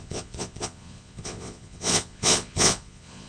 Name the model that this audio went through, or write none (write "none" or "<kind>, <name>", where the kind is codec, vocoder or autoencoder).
vocoder, Vocos